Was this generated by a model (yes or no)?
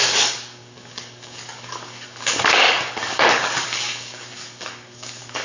yes